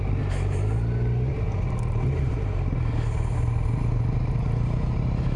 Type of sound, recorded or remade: recorded